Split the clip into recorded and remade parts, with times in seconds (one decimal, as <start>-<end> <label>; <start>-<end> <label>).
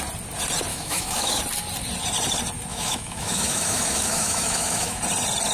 0.0-0.7 recorded; 0.7-1.4 remade; 1.4-2.7 recorded; 2.7-5.0 remade; 5.0-5.5 recorded